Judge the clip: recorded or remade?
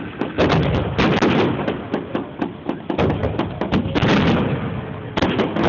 recorded